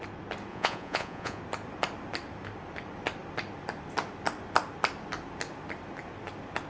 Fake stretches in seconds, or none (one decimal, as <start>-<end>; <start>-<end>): 0.5-1.4